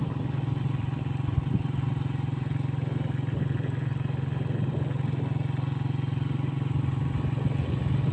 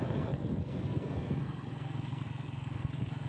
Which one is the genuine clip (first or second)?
first